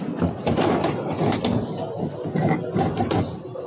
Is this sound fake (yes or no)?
no